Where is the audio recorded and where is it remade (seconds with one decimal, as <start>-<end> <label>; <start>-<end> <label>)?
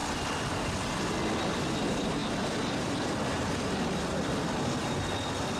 0.0-5.6 recorded